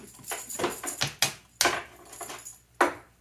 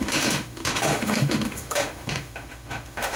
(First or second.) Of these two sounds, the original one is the first